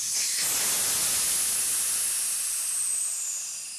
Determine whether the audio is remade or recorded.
recorded